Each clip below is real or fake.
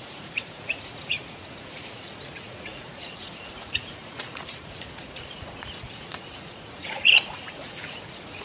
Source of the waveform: fake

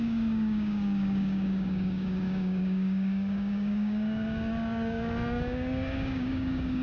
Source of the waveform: fake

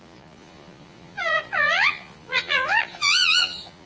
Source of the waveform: fake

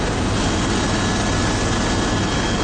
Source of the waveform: real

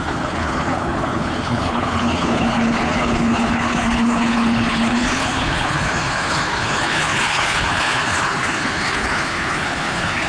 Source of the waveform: fake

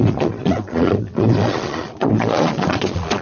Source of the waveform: fake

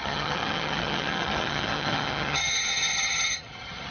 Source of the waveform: fake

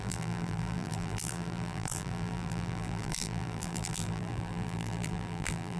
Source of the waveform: fake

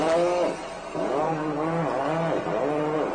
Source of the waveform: real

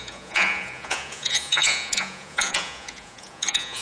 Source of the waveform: fake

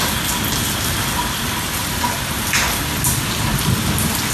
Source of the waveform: real